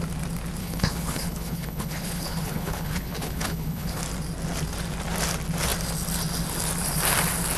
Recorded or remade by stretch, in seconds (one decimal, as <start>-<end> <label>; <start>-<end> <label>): 0.0-0.6 recorded; 0.6-4.0 remade; 4.0-7.6 recorded